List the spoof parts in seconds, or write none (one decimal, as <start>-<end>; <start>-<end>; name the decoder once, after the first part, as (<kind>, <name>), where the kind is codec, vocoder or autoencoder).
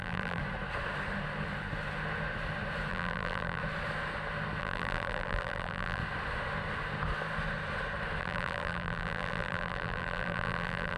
0.0-0.4 (vocoder, BigVGAN v2); 2.9-3.6; 4.6-6.0; 8.2-11.0